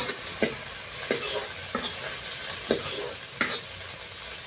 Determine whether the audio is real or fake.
real